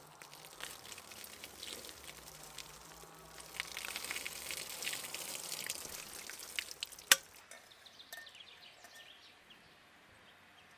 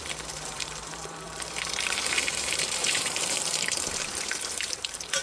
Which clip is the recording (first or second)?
first